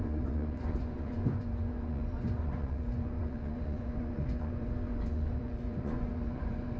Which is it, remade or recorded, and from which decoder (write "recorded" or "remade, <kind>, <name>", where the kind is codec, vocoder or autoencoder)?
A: remade, vocoder, Vocos